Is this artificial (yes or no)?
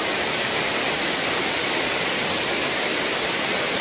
no